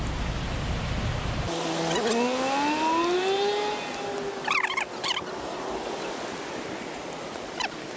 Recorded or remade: recorded